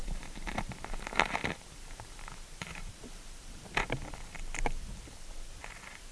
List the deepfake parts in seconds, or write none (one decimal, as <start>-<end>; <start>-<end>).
0.0-3.7